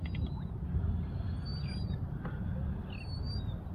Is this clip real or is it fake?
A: real